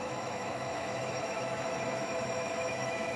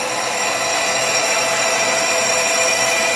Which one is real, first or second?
second